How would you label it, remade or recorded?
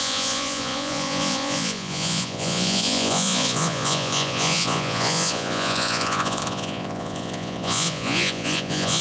remade